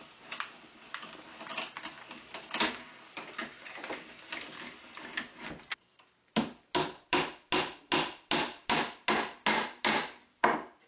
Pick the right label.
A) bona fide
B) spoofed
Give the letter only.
A